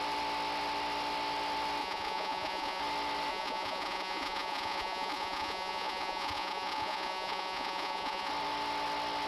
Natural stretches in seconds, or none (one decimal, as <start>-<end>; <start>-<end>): 0.0-1.8; 2.8-3.3; 8.3-9.3